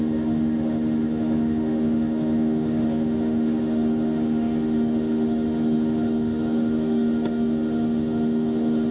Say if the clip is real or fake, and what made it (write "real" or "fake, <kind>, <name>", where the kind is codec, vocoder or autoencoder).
fake, autoencoder, DAC-VAE